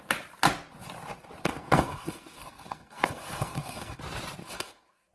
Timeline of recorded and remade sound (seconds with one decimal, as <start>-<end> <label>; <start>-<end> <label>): 0.0-1.4 recorded; 1.4-4.0 remade; 4.0-4.4 recorded; 4.4-5.1 remade